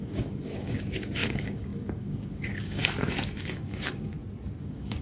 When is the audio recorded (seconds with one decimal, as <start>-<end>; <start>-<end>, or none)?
2.8-3.4; 4.1-4.6